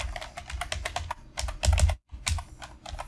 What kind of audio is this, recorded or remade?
recorded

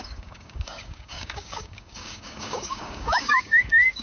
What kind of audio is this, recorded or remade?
remade